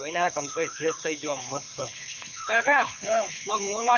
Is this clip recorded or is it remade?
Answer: remade